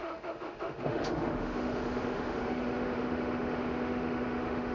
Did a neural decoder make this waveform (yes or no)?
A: yes